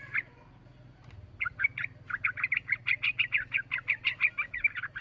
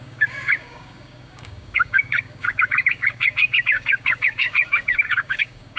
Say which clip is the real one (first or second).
first